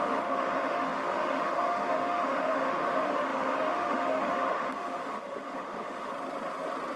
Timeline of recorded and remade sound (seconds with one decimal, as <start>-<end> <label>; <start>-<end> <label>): 0.0-6.1 remade; 6.1-7.0 recorded